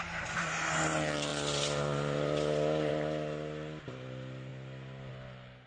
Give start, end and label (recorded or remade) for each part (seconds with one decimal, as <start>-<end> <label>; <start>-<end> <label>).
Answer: 0.0-5.7 recorded

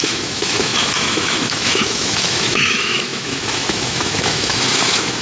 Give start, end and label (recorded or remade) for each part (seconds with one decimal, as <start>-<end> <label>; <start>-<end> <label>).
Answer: 0.0-5.2 remade

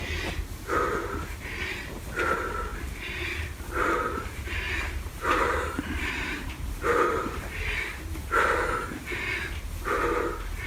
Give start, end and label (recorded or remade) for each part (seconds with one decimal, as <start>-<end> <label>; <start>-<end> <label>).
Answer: 0.0-2.7 recorded; 2.7-7.5 remade; 7.5-10.7 recorded

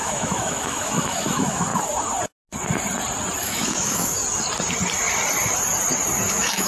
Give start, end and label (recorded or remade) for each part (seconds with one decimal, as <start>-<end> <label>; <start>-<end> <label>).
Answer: 0.0-1.7 remade; 1.7-3.4 recorded; 3.4-4.2 remade; 4.2-6.3 recorded; 6.3-6.7 remade